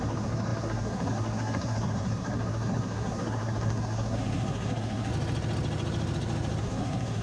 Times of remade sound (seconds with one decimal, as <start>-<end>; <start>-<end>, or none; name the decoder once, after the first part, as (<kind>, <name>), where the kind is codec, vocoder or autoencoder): 0.0-5.1 (codec, SNAC); 6.6-7.2